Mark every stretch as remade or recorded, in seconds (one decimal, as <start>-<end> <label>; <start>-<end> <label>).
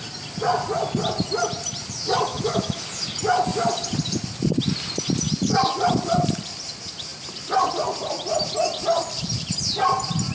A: 0.0-2.3 recorded; 2.3-2.8 remade; 2.8-10.3 recorded